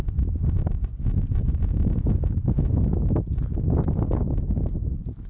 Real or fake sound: real